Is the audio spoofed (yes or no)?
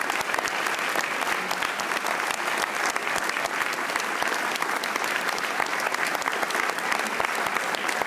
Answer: no